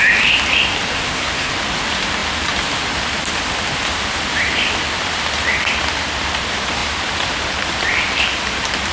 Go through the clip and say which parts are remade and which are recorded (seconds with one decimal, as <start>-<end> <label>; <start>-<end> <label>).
0.0-0.9 recorded; 0.9-1.5 remade; 1.5-8.9 recorded